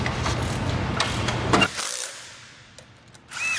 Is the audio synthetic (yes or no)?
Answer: no